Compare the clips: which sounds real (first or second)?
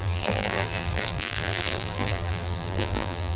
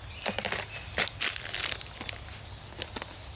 second